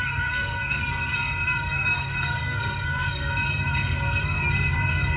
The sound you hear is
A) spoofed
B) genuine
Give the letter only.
A